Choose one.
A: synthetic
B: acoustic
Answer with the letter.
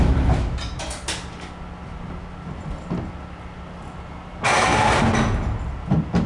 B